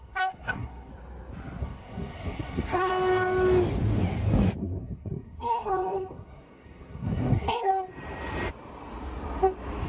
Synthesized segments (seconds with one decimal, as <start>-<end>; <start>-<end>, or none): 0.0-0.9; 1.6-2.9; 4.6-7.7